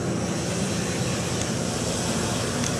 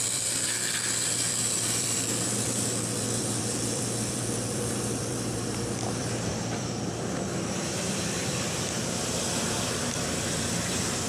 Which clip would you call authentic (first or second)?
first